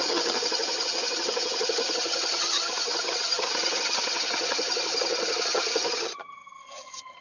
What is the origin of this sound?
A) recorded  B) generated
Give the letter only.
B